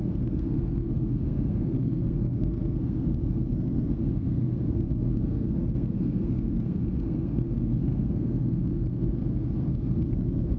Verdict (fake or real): fake